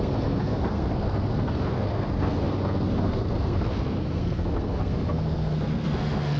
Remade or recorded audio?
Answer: remade